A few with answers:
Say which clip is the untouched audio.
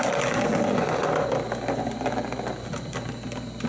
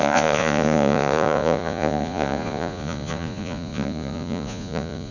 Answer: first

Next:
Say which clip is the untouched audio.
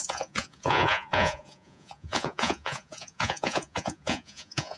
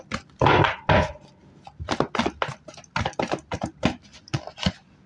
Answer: second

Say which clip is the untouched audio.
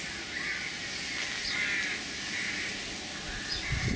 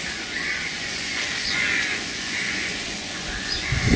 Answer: first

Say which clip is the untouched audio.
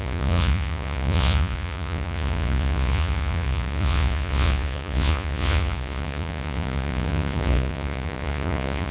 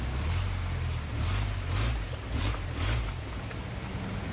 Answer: second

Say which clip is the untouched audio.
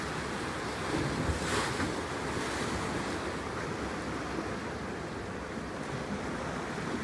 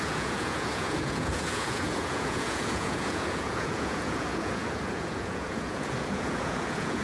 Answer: first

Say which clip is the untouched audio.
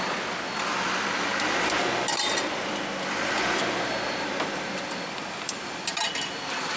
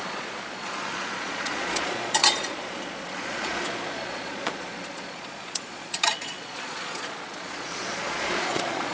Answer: first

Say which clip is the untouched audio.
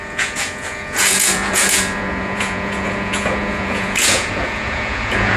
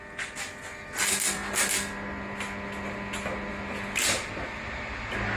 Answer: second